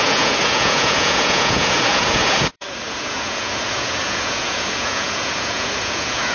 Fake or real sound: fake